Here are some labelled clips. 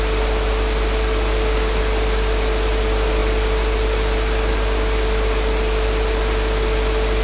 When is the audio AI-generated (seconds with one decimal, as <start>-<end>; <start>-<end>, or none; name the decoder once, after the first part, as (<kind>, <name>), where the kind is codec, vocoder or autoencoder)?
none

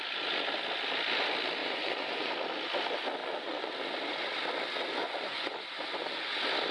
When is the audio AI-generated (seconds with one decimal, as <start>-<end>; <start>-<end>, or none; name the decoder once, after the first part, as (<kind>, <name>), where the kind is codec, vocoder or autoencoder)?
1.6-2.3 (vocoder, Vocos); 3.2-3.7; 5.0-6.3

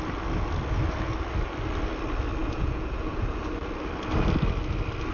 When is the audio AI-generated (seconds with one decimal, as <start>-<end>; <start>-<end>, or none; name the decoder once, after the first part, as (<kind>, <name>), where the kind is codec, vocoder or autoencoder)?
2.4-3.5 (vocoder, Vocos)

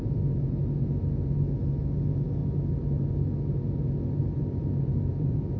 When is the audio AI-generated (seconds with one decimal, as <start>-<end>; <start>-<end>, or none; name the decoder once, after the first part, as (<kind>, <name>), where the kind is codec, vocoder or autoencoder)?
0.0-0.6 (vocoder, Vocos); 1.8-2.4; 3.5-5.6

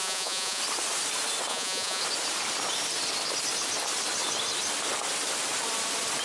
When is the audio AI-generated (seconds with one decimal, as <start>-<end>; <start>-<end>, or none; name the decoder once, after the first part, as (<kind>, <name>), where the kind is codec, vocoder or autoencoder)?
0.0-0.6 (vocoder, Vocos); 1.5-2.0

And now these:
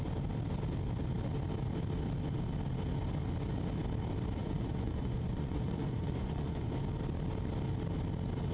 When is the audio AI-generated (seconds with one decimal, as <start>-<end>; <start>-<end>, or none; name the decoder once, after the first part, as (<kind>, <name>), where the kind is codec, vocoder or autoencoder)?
4.4-6.7 (vocoder, Vocos)